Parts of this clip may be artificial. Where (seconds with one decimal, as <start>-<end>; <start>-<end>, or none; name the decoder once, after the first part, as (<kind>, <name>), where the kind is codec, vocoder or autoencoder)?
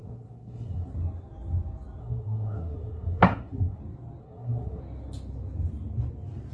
0.0-0.9 (codec, SNAC); 2.0-3.8; 4.2-4.8